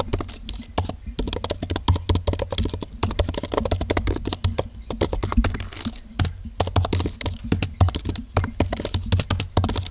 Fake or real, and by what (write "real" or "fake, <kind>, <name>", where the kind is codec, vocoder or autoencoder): real